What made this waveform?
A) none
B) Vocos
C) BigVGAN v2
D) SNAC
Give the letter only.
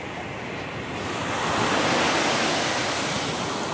A